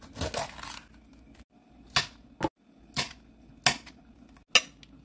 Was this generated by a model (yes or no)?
no